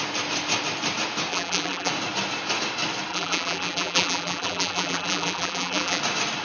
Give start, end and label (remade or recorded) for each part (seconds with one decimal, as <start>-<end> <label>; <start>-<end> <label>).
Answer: 0.0-1.3 recorded; 1.3-1.9 remade; 1.9-3.1 recorded; 3.1-6.0 remade; 6.0-6.4 recorded